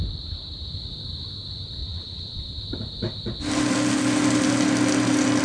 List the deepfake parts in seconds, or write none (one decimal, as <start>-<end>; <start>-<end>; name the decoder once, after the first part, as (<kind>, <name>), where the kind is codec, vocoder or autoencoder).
1.8-2.4 (vocoder, WaveNeXt)